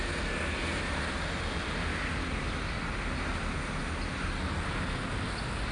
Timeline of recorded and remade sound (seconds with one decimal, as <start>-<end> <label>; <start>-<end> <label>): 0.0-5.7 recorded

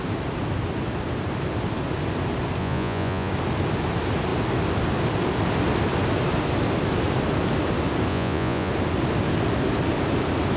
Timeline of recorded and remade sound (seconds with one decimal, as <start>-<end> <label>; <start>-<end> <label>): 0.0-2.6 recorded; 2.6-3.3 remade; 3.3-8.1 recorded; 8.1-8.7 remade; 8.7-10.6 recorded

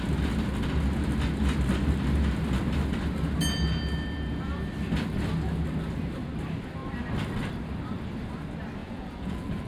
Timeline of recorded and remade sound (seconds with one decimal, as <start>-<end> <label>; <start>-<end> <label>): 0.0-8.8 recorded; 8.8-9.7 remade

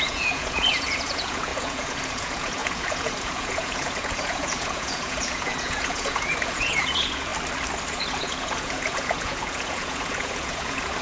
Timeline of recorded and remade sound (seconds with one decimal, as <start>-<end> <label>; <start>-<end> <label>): 0.0-7.3 remade; 7.3-7.9 recorded; 7.9-11.0 remade

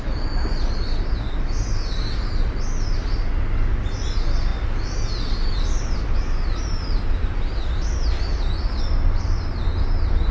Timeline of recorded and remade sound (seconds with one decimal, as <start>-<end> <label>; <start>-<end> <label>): 0.0-10.3 recorded